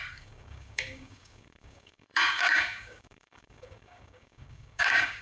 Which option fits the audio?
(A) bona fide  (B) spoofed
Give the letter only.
B